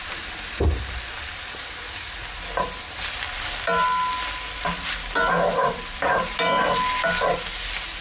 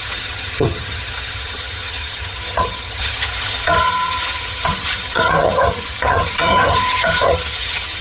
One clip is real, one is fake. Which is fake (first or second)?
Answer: second